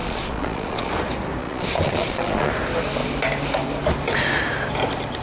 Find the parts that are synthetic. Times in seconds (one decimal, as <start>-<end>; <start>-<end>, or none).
0.0-0.9; 1.4-2.5